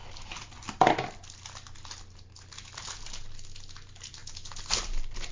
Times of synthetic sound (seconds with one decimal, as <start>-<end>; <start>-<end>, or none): none